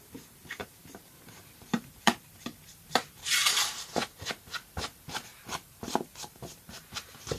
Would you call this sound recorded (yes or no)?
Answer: no